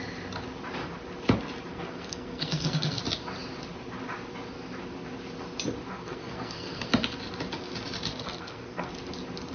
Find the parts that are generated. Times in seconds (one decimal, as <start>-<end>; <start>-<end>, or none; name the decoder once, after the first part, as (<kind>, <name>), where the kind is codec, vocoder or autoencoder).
1.7-3.0 (codec, SNAC); 5.9-6.9; 8.1-8.9